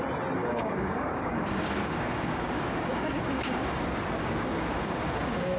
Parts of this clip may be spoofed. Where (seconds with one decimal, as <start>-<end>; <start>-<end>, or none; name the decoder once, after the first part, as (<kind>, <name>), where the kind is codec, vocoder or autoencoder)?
0.4-3.8 (codec, DAC); 4.2-5.6

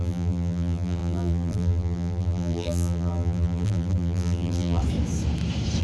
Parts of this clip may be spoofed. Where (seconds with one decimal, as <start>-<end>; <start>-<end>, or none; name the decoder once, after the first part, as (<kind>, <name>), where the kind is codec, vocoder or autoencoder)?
0.0-4.8 (vocoder, BigVGAN v2)

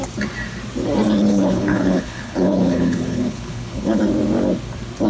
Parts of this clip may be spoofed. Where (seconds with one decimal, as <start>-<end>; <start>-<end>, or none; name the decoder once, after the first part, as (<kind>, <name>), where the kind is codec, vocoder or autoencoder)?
1.3-4.0 (codec, HILCodec)

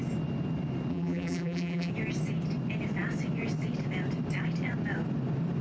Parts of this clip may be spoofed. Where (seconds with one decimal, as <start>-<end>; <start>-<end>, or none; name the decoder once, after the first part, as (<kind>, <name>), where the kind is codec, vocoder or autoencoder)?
0.9-1.9 (vocoder, BigVGAN v2)

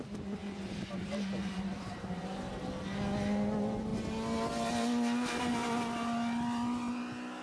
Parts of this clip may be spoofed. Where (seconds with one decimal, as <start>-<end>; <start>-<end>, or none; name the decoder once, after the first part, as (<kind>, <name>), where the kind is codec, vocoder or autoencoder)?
0.4-2.2 (vocoder, BigVGAN v2)

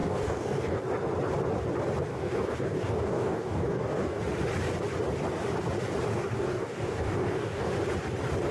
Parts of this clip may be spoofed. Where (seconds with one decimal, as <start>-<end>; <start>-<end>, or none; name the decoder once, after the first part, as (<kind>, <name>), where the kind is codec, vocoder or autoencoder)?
0.0-0.8 (codec, DAC); 2.1-4.2; 6.1-7.7

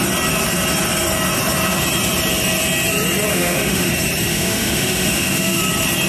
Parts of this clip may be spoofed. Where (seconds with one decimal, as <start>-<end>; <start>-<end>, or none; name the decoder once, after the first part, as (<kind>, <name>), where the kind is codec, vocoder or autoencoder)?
3.3-3.9 (autoencoder, DAC-VAE); 4.3-5.6

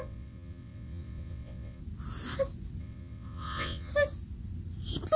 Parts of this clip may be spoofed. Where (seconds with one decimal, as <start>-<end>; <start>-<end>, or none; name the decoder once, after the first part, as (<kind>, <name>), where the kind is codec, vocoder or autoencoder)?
0.0-1.8 (vocoder, WaveNeXt); 2.8-3.9